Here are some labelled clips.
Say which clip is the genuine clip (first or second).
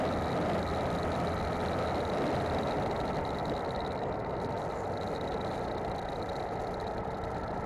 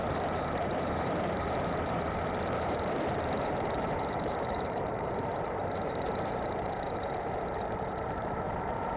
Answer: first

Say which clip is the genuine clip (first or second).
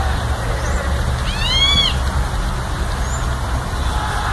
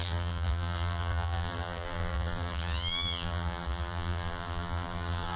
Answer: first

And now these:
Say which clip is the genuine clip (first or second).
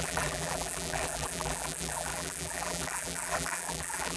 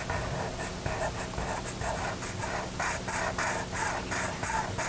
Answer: second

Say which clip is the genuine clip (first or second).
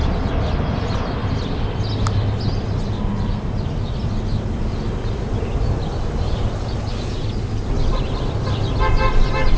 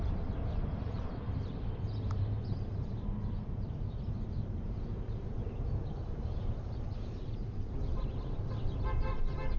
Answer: first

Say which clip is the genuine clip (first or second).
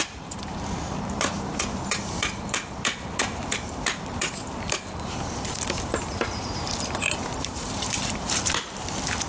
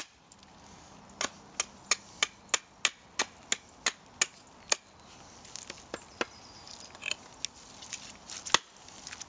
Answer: second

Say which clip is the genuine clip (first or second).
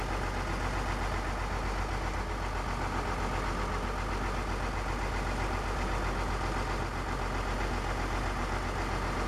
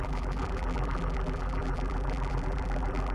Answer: first